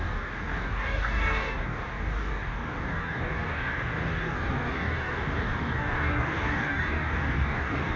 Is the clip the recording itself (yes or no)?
no